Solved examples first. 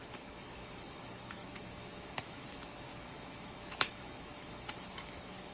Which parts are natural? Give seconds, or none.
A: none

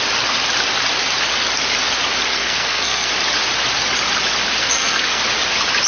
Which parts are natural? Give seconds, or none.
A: 0.0-2.3; 3.1-4.6; 5.2-5.9

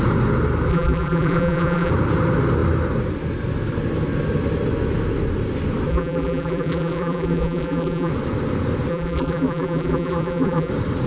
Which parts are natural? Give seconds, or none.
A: 0.0-0.7; 1.9-5.9; 8.1-8.9; 10.7-11.1

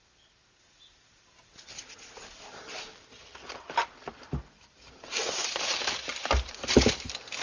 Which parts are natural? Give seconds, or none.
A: 0.0-4.1; 4.8-5.2; 5.7-7.4

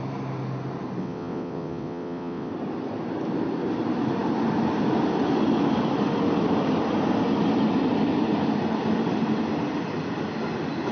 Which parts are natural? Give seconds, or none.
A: 0.0-1.0; 2.5-10.9

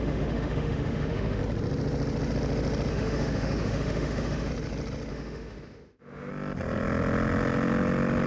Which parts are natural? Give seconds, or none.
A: 1.4-2.9; 4.5-5.1; 6.3-8.3

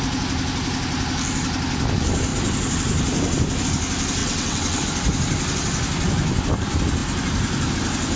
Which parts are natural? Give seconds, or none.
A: 0.0-4.2; 4.8-8.2

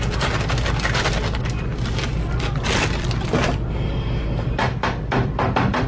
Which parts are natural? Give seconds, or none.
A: 0.0-5.9